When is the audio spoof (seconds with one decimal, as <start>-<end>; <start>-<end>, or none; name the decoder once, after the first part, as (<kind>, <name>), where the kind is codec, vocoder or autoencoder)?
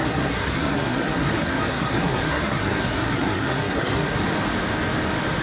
0.0-4.2 (codec, SNAC)